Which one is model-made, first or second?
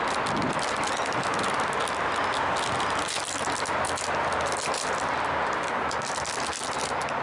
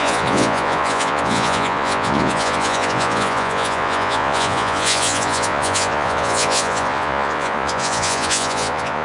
second